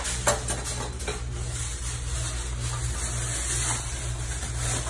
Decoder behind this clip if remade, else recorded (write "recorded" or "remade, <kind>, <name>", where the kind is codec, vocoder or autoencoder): recorded